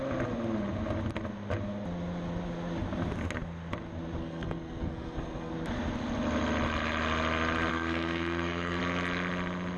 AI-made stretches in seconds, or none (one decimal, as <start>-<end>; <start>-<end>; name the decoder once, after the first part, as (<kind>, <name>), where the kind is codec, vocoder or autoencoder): 4.2-5.5 (codec, SNAC); 7.7-8.8